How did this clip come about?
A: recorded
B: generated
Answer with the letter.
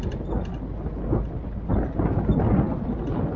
A